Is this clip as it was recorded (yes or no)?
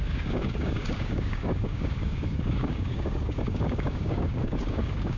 no